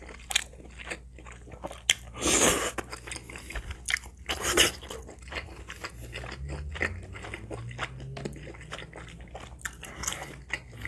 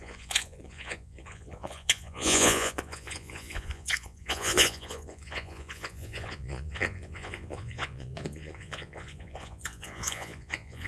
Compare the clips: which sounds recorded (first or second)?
first